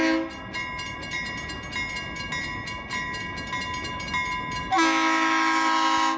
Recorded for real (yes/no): yes